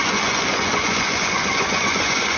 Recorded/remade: remade